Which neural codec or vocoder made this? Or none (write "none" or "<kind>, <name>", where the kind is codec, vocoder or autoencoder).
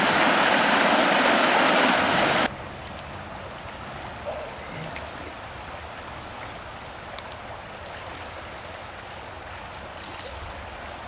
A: none